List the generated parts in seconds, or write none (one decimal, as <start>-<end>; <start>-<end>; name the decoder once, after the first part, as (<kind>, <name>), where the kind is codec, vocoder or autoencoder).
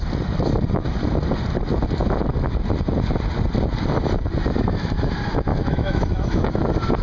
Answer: 5.5-6.6 (autoencoder, DAC-VAE)